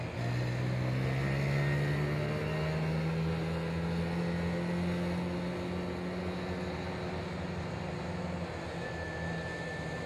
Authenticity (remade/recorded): recorded